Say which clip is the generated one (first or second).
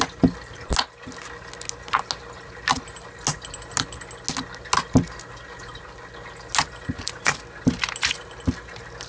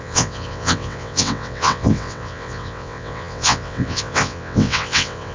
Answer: second